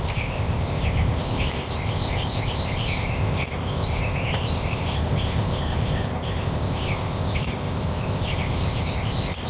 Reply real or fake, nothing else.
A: fake